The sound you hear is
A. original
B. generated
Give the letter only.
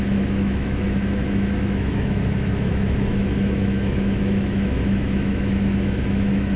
B